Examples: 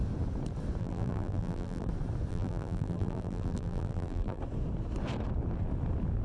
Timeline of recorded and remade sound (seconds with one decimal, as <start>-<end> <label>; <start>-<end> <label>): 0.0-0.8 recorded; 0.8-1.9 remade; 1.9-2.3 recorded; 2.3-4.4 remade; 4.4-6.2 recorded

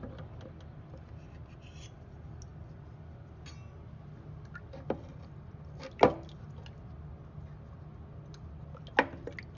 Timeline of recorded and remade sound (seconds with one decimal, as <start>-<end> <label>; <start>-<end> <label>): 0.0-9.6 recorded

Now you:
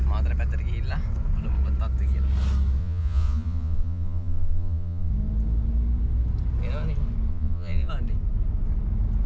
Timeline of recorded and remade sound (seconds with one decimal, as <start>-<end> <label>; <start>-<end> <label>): 0.0-2.8 recorded; 2.8-5.1 remade; 5.1-7.3 recorded; 7.3-7.9 remade; 7.9-9.3 recorded

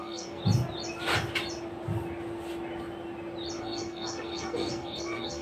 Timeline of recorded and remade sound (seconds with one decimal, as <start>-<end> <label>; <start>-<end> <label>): 0.0-0.4 remade; 0.4-3.6 recorded; 3.6-5.4 remade